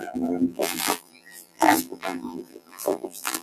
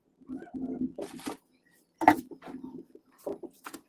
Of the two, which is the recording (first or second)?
second